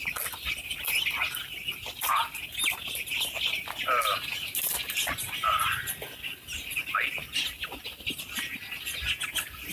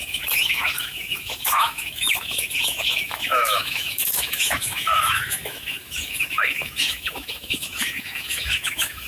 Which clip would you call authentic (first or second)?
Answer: first